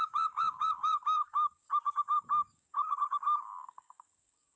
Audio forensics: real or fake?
fake